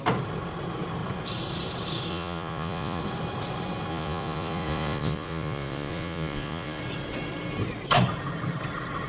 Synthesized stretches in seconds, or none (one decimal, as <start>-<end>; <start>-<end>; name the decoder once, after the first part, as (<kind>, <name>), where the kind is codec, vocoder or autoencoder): 2.1-3.0 (vocoder, Vocos); 3.9-6.8